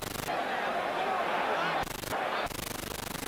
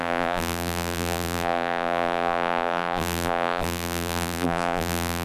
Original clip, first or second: first